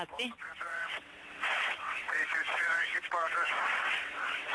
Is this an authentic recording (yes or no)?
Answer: no